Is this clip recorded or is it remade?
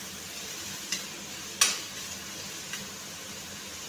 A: recorded